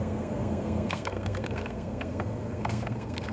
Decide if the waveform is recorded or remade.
remade